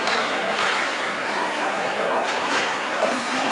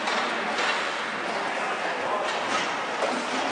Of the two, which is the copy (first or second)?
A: first